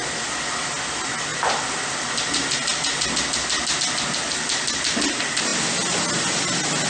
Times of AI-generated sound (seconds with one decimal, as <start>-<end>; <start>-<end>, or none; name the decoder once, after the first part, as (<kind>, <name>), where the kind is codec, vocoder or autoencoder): none